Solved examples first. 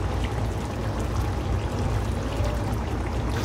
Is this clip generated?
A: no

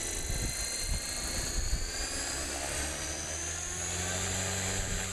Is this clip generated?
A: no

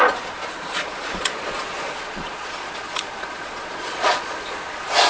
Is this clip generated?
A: yes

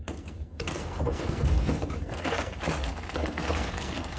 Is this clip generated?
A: yes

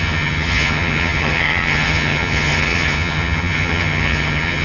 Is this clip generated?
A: yes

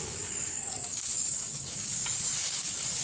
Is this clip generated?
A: yes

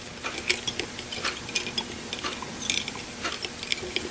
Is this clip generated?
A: no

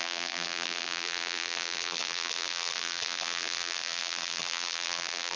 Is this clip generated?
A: yes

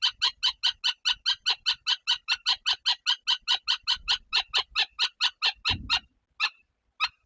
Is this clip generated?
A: no